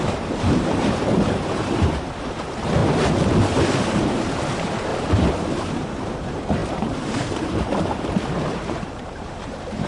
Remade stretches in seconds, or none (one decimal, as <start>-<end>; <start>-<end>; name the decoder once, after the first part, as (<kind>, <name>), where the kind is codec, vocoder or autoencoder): 0.0-2.8 (vocoder, BigVGAN v2); 3.5-4.9; 5.5-9.9